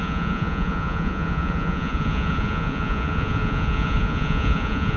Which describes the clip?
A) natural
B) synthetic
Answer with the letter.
B